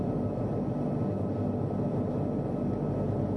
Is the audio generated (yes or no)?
no